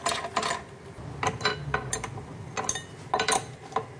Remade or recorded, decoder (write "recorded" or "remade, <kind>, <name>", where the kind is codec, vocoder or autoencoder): recorded